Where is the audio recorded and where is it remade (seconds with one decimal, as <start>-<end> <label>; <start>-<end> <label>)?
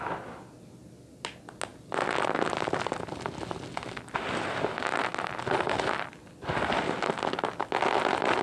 0.0-8.4 recorded